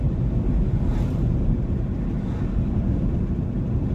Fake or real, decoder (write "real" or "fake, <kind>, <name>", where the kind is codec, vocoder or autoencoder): real